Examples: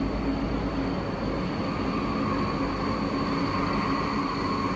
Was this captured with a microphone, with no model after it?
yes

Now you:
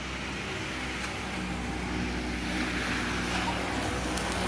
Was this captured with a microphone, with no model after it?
yes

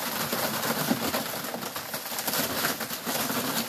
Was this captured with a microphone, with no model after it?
yes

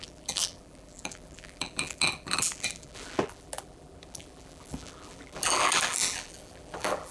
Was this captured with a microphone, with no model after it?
no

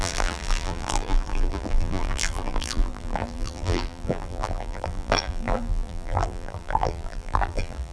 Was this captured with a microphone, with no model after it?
no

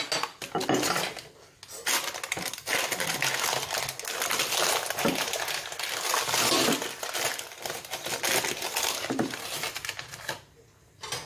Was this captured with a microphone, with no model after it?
yes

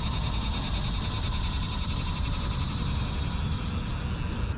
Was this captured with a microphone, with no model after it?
yes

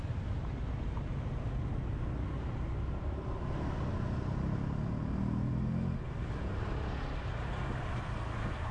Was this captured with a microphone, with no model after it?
yes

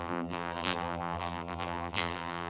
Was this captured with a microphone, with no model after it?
no